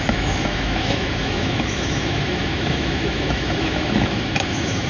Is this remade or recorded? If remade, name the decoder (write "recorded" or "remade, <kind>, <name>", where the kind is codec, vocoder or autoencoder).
remade, autoencoder, DAC-VAE